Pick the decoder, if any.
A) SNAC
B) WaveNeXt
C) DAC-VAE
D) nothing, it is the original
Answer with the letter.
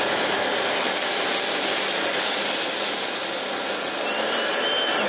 D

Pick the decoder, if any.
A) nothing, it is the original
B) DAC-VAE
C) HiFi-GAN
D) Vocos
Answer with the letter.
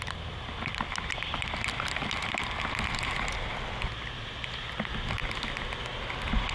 A